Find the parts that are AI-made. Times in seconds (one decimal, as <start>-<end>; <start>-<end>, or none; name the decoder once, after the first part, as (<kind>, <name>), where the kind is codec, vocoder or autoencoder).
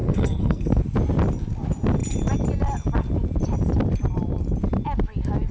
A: 0.0-0.8 (codec, SNAC)